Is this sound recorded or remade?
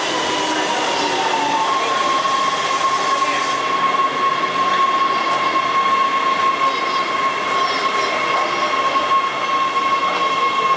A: recorded